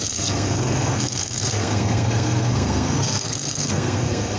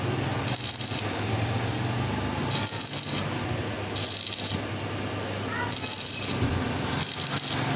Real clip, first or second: second